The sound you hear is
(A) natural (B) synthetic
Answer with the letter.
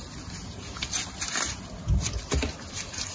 A